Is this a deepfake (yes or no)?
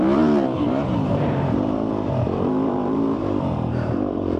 yes